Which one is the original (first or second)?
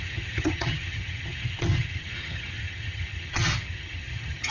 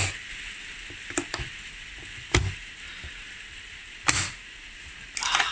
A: second